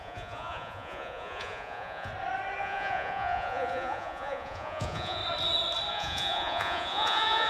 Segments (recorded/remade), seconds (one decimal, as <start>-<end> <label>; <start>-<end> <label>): 0.0-2.1 remade; 2.1-2.6 recorded; 2.6-5.2 remade; 5.2-5.9 recorded; 5.9-7.5 remade